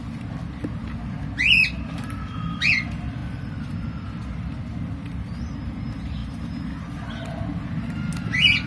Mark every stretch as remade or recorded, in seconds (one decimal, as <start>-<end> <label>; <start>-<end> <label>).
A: 0.0-8.7 recorded